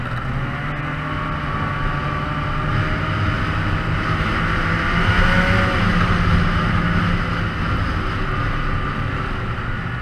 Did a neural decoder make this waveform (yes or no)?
no